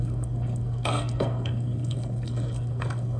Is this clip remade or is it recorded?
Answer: remade